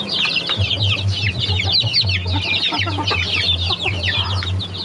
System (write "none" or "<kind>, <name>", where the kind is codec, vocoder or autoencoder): none